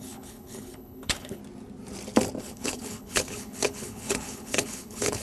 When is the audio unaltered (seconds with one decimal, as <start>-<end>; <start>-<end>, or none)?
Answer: 1.4-2.4